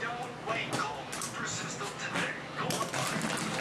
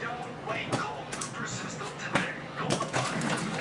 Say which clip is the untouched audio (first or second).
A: first